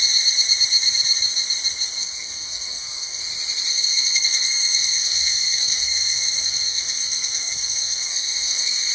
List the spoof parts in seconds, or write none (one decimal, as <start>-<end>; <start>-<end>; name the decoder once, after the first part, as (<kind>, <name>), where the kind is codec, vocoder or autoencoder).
2.0-3.2 (codec, SNAC); 3.7-8.9